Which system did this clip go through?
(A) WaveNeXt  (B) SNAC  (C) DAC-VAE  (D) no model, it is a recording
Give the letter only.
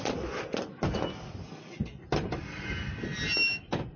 D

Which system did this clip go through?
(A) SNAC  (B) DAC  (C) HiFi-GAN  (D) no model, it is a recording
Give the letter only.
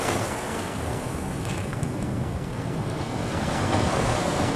A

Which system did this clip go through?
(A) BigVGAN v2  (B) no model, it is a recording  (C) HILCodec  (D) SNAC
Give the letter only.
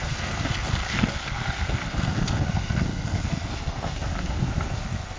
D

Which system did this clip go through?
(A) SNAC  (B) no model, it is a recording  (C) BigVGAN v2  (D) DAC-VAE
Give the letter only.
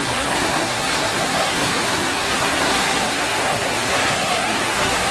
A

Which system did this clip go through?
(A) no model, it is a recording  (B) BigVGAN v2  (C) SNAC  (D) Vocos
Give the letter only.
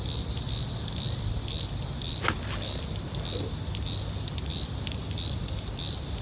A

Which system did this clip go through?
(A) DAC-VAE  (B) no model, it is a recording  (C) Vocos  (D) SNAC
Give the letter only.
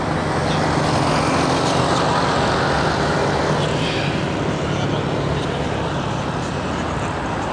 B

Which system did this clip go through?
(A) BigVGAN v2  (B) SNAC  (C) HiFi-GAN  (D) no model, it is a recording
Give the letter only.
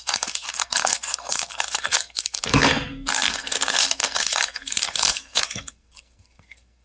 B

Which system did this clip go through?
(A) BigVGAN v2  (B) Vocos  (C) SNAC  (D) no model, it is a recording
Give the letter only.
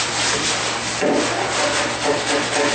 D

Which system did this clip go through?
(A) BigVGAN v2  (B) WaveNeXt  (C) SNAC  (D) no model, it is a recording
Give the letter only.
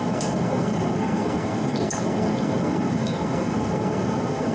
C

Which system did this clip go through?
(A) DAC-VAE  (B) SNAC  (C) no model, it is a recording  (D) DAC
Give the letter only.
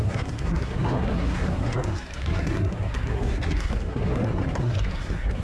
B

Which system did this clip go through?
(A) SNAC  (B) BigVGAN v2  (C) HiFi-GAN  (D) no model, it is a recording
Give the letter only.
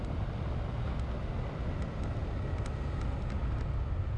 D